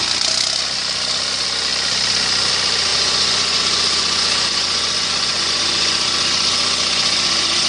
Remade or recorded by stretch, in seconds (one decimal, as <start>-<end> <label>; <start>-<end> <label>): 0.0-2.9 recorded; 2.9-7.7 remade